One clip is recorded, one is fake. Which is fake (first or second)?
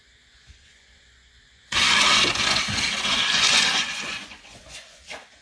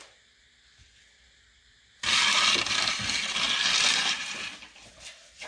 first